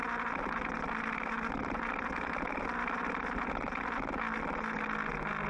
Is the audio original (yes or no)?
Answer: yes